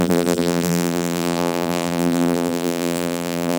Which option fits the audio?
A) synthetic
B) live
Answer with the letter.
A